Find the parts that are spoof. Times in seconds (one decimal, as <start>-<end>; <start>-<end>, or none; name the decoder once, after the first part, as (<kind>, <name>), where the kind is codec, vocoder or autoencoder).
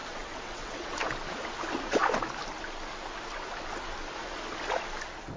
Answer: 0.0-1.0 (vocoder, WaveNeXt)